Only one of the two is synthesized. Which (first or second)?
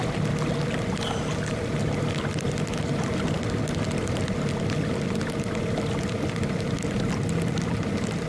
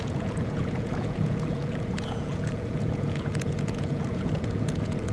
second